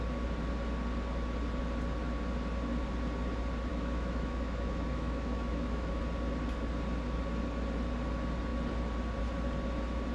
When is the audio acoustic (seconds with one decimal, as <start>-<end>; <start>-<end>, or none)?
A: 0.0-3.7; 6.0-10.1